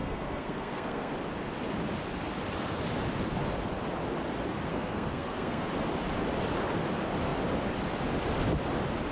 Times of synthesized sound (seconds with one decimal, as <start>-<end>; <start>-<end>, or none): 0.0-1.1; 4.7-5.7